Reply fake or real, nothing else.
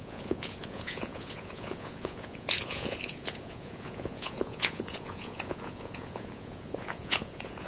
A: fake